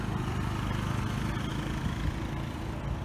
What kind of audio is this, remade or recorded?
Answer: recorded